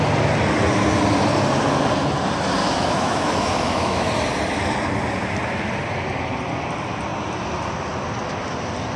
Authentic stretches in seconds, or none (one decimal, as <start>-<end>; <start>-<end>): 0.0-2.6; 4.1-9.0